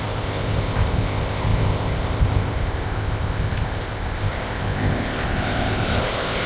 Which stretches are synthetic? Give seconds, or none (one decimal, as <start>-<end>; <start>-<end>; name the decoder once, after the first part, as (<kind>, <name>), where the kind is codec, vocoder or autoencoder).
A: 0.0-6.5 (codec, ZipCodec)